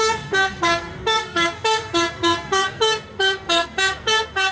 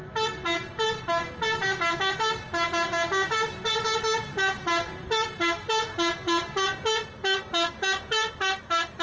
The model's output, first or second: first